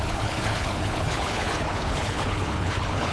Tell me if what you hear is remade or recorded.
remade